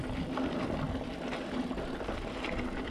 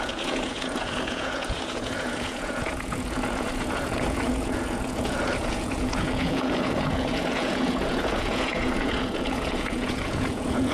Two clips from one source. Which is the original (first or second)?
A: first